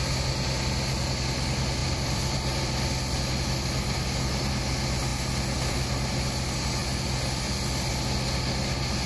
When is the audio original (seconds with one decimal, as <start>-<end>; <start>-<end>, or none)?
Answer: 0.0-1.8; 4.5-6.8; 7.9-9.1